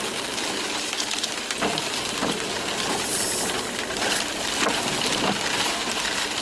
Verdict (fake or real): real